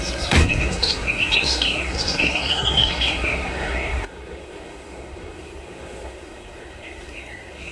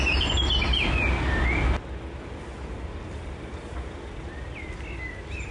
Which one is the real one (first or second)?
second